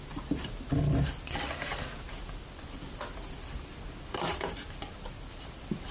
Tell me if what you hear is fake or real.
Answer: real